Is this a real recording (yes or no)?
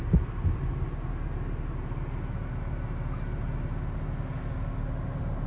yes